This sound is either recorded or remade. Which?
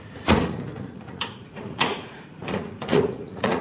remade